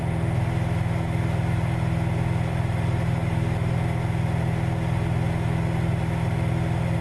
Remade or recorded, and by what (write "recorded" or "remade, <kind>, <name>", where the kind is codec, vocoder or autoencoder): recorded